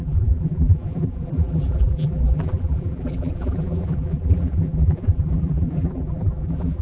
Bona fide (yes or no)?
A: no